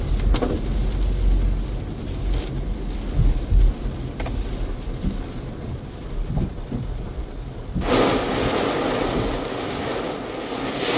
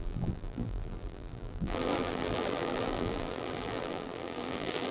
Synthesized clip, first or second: second